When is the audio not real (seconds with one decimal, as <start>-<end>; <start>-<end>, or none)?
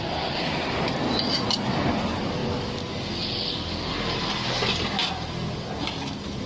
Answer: none